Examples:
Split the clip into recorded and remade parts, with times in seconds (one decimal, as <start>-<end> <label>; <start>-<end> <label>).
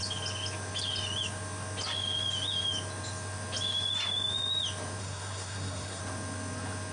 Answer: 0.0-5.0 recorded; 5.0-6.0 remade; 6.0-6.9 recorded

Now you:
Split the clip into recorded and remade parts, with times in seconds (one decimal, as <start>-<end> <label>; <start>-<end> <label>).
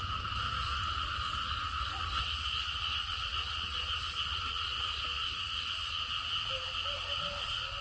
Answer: 0.0-7.8 recorded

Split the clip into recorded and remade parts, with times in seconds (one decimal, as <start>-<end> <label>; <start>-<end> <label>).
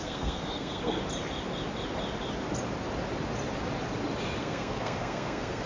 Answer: 0.0-1.0 remade; 1.0-4.4 recorded; 4.4-5.7 remade